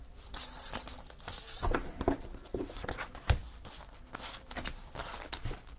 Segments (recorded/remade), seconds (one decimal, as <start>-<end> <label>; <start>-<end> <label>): 0.0-5.8 recorded